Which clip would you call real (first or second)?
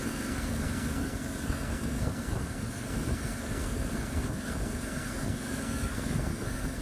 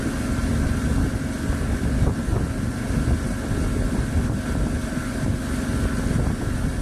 second